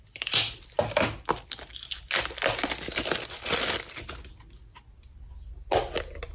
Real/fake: real